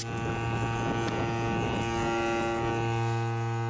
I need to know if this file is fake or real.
real